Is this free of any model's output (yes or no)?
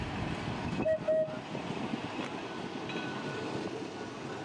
yes